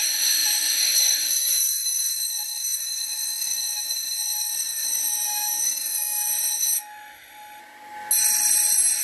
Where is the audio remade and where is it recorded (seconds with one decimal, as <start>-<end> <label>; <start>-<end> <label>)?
0.0-7.6 remade; 7.6-9.0 recorded